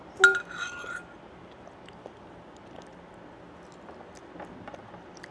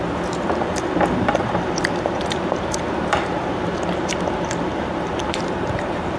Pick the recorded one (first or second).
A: first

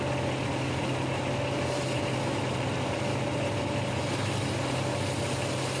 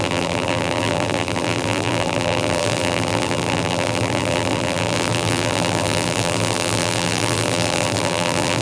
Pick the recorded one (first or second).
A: first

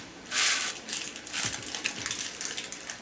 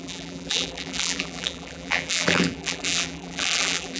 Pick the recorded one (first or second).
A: first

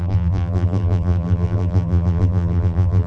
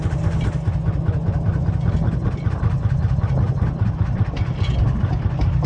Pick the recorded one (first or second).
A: second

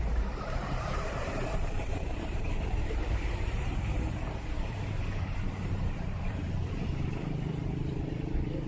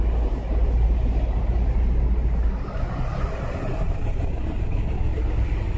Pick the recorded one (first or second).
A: second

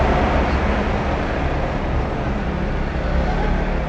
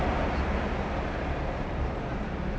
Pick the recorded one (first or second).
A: first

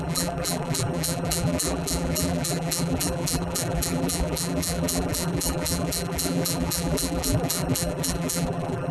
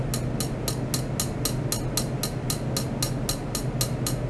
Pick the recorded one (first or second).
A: second